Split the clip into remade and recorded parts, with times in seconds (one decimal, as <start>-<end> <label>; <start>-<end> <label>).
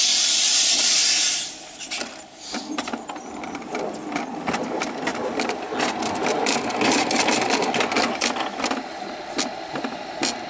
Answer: 0.0-1.0 recorded; 1.0-2.6 remade; 2.6-10.5 recorded